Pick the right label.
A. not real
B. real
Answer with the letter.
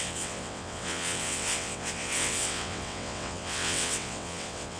A